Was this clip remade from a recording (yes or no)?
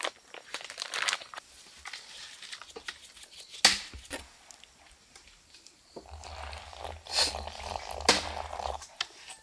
no